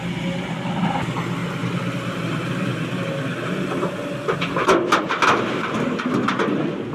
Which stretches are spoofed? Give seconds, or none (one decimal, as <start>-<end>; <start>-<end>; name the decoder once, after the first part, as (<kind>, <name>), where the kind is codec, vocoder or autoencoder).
none